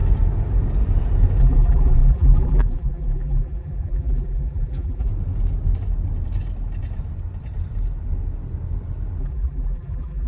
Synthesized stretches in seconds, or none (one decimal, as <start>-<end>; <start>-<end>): 1.4-5.1; 9.2-10.3